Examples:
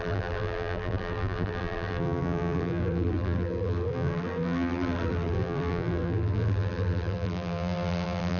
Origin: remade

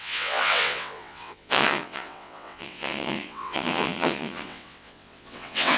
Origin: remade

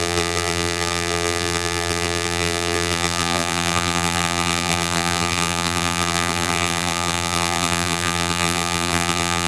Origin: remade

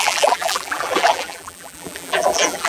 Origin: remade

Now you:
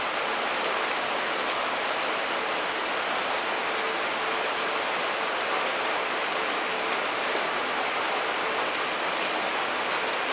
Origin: recorded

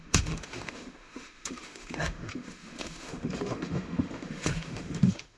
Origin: remade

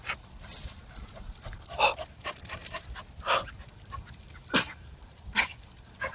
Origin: remade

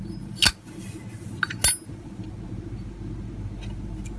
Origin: recorded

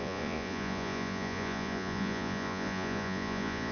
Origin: remade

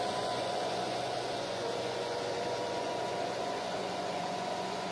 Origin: remade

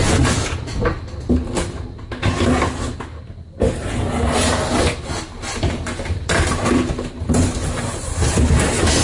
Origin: recorded